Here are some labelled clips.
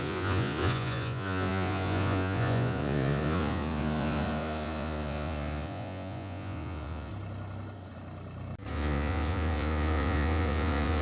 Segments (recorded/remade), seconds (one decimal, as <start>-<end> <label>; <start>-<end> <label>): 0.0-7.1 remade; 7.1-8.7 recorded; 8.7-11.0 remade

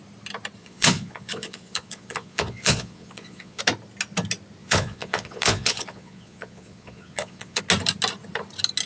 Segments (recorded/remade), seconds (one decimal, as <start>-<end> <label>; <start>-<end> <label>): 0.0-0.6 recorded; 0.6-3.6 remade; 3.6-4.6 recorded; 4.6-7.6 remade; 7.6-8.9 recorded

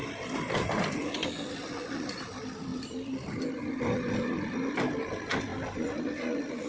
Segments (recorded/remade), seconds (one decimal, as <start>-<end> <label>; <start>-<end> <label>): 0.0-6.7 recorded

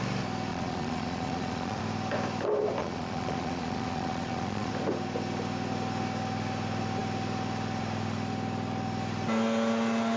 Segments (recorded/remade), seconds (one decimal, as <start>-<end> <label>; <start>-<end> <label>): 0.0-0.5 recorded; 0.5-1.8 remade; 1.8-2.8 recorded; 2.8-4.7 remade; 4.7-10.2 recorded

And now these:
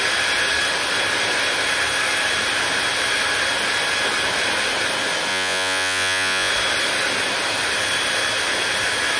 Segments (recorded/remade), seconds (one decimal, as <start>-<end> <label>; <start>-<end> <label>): 0.0-5.3 recorded; 5.3-6.5 remade; 6.5-9.2 recorded

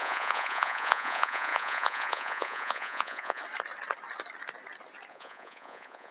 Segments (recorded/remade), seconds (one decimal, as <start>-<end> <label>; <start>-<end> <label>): 0.0-3.4 remade; 3.4-5.1 recorded; 5.1-6.1 remade

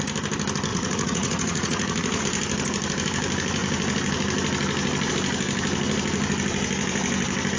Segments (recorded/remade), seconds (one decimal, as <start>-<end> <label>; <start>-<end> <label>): 0.0-0.7 recorded; 0.7-2.2 remade; 2.2-7.6 recorded